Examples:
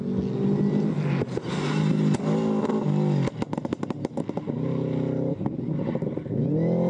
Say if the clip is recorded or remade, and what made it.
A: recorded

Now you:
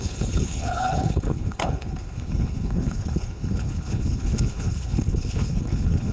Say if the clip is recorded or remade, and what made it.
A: remade, codec, HILCodec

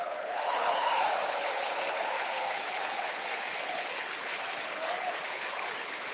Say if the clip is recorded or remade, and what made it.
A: remade, codec, HILCodec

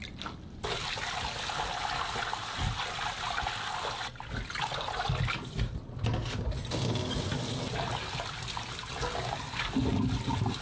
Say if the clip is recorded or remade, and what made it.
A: recorded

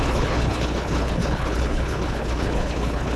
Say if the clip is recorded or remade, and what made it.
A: remade, codec, HILCodec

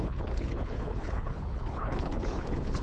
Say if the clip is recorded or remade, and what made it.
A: remade, codec, HILCodec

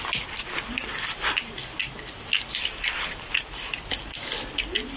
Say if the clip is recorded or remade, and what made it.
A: recorded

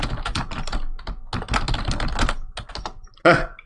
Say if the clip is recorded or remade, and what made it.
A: recorded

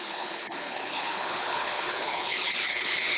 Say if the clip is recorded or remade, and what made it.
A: remade, codec, HILCodec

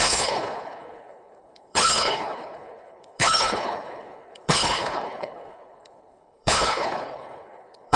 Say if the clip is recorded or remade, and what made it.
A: remade, codec, HILCodec